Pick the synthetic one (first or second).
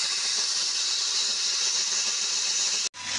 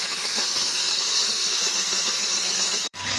second